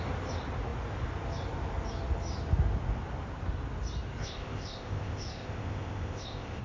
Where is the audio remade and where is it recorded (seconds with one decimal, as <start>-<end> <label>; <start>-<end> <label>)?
0.0-4.2 recorded; 4.2-6.6 remade